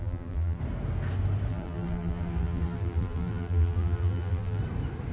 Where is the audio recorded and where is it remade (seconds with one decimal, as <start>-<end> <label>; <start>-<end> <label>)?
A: 0.0-0.6 remade; 0.6-1.5 recorded; 1.5-4.6 remade; 4.6-5.1 recorded